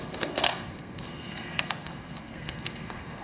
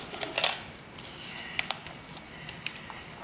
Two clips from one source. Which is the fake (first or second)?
first